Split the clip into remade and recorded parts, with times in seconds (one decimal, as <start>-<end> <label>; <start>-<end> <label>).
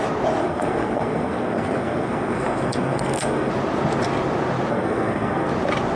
0.0-0.4 recorded; 0.4-3.5 remade; 3.5-4.7 recorded; 4.7-5.5 remade; 5.5-6.0 recorded